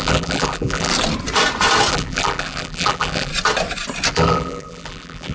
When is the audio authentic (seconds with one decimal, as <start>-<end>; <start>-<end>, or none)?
0.9-1.9; 3.3-4.1

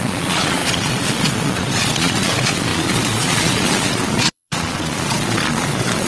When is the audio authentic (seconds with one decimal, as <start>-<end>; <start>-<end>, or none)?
none

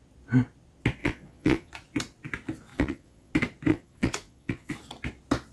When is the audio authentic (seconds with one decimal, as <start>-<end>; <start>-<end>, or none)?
0.0-1.0; 1.7-2.7; 3.3-3.7; 4.8-5.5